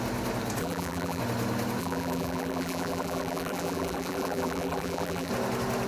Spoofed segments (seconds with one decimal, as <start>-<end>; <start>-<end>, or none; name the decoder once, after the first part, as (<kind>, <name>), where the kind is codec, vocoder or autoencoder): 0.6-1.2 (vocoder, BigVGAN v2); 1.8-5.3